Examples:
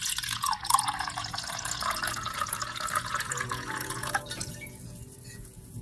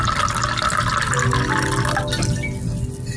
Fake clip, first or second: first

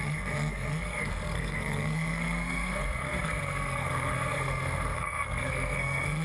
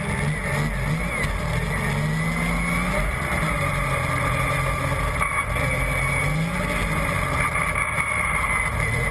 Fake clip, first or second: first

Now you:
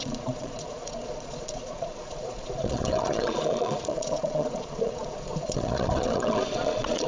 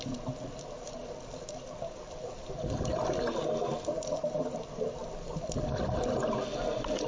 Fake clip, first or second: first